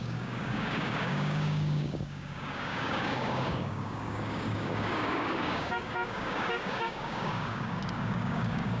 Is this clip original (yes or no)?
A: no